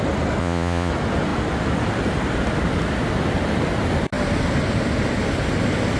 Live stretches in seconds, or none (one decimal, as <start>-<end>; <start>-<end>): 0.0-0.4; 0.9-6.0